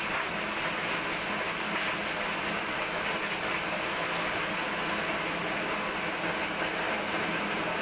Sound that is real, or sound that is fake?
real